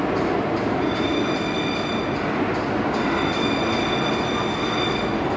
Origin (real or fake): real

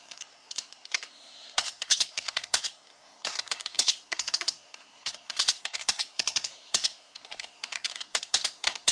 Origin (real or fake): fake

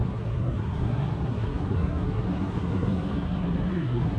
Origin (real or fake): fake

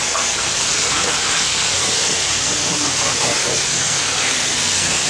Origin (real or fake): fake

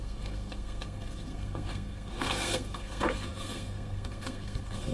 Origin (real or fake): fake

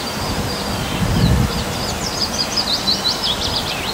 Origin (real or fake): real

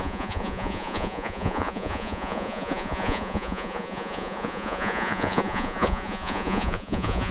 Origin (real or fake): fake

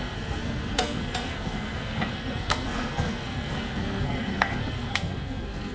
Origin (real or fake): fake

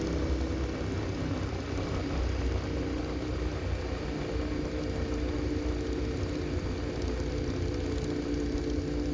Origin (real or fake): real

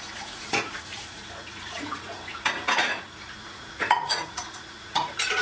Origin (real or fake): fake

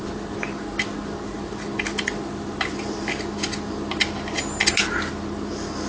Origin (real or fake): real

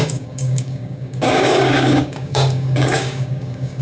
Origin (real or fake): fake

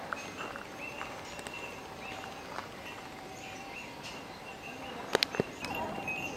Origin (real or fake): real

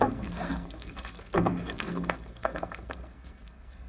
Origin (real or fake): fake